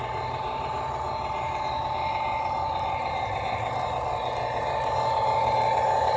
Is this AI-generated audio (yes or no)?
yes